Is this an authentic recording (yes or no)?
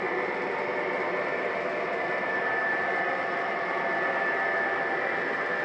yes